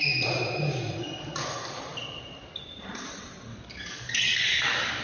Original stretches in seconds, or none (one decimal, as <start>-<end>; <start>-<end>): 0.0-3.5